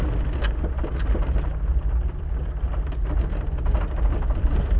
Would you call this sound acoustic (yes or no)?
yes